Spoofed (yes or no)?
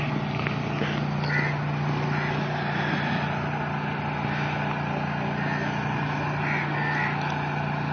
no